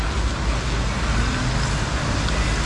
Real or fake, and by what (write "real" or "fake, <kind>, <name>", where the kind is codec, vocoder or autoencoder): real